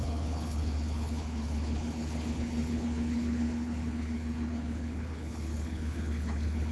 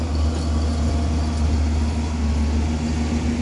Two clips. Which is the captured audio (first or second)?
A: second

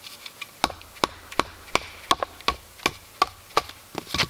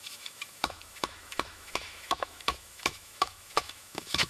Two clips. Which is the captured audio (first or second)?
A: first